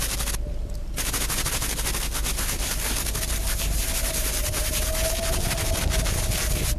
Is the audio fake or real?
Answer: real